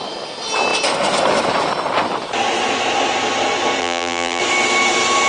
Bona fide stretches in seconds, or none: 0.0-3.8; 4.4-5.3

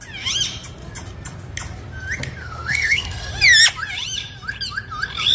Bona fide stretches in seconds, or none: 0.0-2.4; 3.3-5.3

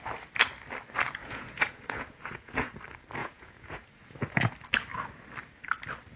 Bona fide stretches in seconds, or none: 0.0-1.2; 2.7-3.2; 4.4-6.2

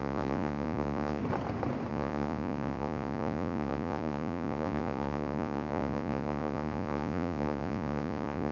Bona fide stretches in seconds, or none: 1.2-1.9

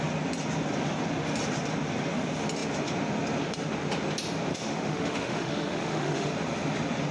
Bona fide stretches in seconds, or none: 0.0-4.5; 6.3-7.1

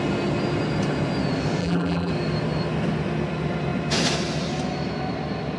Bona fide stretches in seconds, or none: 0.0-1.6; 2.1-5.6